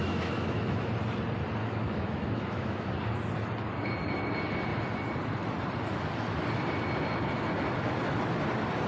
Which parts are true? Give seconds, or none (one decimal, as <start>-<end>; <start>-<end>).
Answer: 0.9-1.6; 2.9-8.9

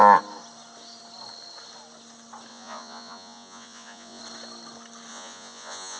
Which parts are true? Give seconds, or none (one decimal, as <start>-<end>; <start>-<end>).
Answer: 0.0-2.5; 4.2-5.1

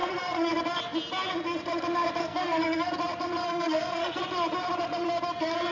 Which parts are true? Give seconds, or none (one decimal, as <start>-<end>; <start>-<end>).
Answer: 0.5-2.2; 2.9-3.4; 4.2-5.7

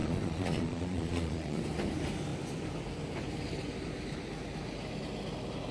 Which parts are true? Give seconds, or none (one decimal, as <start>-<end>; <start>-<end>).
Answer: 1.6-5.7

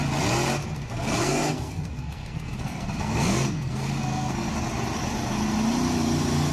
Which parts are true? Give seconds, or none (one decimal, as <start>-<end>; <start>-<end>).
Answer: 0.0-0.6; 4.5-6.5

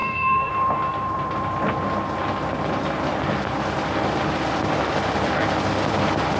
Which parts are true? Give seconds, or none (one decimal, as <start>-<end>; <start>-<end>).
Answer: 0.5-6.4

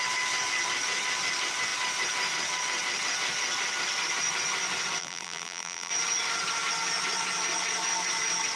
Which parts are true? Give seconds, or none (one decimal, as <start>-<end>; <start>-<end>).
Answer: 0.0-5.0; 5.9-8.6

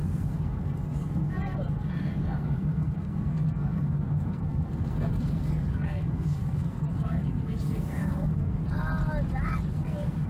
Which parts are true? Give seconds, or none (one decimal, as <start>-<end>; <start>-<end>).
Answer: 8.6-9.7